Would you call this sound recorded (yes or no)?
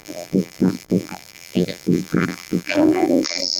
no